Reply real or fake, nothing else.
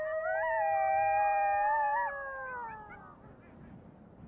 real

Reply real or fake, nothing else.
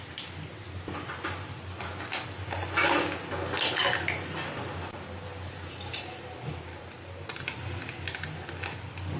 real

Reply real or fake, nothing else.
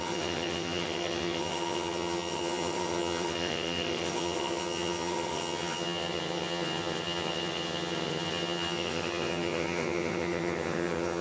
fake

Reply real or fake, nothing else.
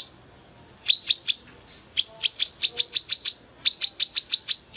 real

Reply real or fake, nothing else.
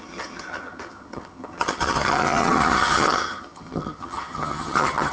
fake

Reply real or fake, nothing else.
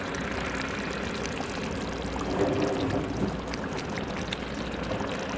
real